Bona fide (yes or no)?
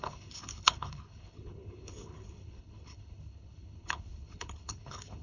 no